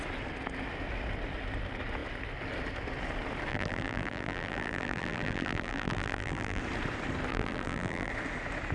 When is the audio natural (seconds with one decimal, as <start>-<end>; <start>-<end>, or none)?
0.0-3.5; 6.6-7.3; 8.1-8.7